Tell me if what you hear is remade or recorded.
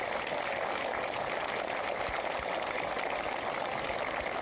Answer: recorded